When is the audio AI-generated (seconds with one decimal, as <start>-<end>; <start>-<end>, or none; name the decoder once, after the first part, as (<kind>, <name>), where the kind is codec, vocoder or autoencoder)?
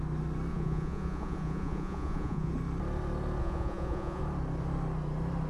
0.5-2.5 (vocoder, Vocos); 3.4-4.2